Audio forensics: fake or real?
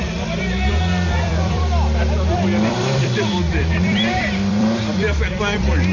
fake